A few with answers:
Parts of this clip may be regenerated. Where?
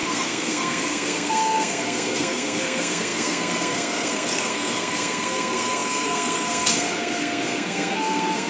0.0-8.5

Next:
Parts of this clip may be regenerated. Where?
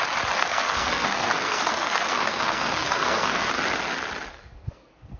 0.4-3.5; 4.3-5.2